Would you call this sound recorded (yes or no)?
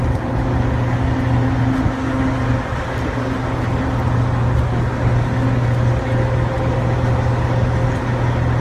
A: yes